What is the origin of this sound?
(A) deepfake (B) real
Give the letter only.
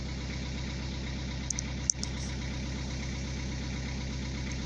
B